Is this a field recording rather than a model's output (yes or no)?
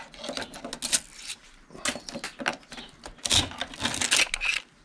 yes